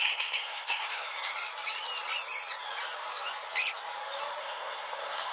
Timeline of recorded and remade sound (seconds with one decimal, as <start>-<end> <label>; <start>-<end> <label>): 0.0-1.3 remade; 1.3-4.4 recorded; 4.4-5.3 remade